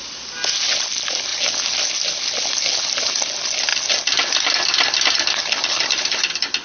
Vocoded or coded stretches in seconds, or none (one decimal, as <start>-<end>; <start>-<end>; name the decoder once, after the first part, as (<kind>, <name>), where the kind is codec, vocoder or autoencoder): none

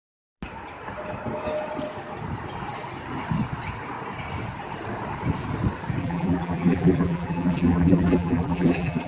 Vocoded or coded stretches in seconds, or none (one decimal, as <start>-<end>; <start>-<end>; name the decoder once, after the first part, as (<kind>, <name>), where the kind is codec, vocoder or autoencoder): 6.0-9.1 (vocoder, BigVGAN v2)

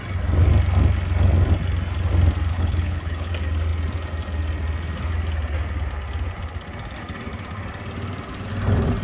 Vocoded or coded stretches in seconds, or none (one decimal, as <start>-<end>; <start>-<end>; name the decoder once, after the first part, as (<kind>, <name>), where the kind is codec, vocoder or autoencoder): 2.5-3.3 (codec, HILCodec)

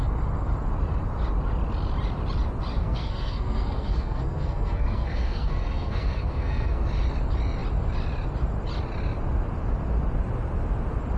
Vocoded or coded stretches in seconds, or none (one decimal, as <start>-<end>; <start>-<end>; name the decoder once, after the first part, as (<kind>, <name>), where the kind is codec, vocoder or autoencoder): 2.8-6.9 (codec, SNAC)

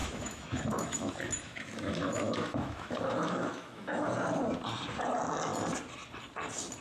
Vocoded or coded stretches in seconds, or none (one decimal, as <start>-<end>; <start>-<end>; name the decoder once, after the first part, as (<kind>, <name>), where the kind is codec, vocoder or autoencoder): 0.0-4.1 (autoencoder, DAC-VAE)

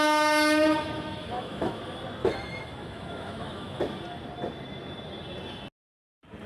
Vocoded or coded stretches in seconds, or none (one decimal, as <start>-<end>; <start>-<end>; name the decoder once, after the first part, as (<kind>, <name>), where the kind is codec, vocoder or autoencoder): 0.7-1.8 (autoencoder, DAC-VAE); 2.2-3.8

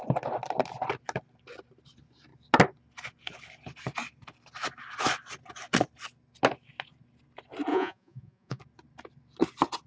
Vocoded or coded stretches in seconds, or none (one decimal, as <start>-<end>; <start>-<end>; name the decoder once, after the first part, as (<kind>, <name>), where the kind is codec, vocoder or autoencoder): 7.7-8.6 (vocoder, Vocos)